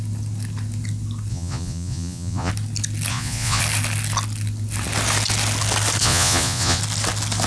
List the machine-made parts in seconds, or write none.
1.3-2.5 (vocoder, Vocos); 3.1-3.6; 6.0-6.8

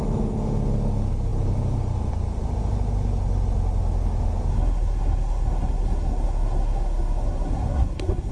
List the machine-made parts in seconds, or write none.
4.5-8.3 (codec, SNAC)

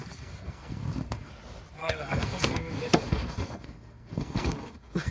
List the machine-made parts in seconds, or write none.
0.0-1.3 (codec, SNAC); 1.8-5.1

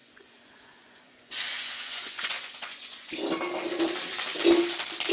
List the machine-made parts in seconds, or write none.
0.0-3.1 (vocoder, Vocos)

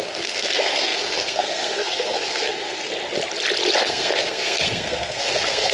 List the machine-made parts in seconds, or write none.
0.0-2.9 (codec, SNAC); 3.8-5.7

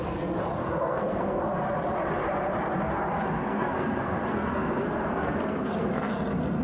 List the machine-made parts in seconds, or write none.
0.6-1.4 (codec, SNAC); 3.4-6.1